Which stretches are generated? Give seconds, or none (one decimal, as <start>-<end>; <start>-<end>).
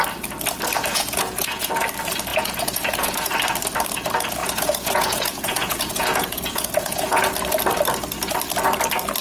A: 0.9-1.7; 2.3-3.3; 4.4-7.2